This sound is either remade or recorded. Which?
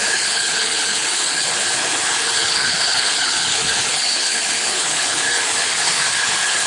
remade